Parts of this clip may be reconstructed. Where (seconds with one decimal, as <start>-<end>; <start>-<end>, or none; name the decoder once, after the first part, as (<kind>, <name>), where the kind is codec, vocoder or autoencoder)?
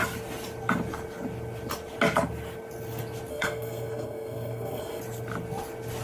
3.3-5.0 (codec, SNAC)